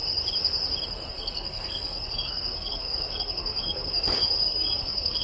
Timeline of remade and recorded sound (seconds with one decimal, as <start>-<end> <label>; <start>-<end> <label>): 0.0-1.1 recorded; 1.1-5.2 remade